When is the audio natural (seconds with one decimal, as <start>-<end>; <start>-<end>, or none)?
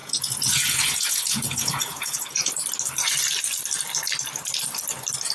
2.5-5.3